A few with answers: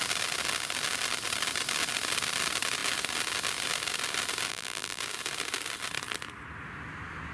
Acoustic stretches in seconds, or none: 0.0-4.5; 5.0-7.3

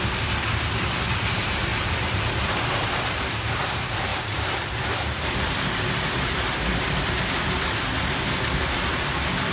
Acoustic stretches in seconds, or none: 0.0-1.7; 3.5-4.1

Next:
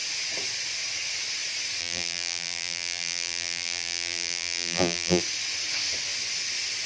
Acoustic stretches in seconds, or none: 0.0-1.8; 5.2-6.9